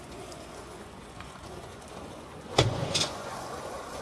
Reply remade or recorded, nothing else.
remade